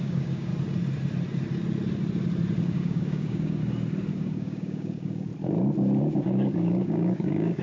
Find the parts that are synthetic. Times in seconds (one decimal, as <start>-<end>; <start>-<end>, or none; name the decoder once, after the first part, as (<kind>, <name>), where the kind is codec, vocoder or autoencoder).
0.0-0.5 (codec, DAC); 2.6-3.6; 4.1-5.3; 6.0-7.6